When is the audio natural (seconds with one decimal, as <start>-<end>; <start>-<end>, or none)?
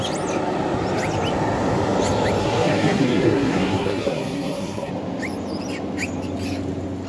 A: 0.0-2.4; 4.9-7.1